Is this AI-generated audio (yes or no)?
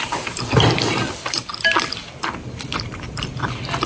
yes